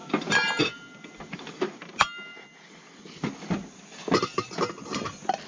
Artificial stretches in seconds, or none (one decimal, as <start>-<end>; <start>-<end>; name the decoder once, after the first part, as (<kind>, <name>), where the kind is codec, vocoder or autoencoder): none